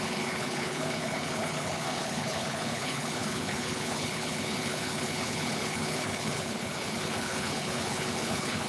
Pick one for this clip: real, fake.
fake